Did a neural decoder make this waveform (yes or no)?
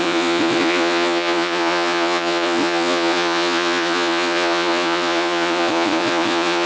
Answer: yes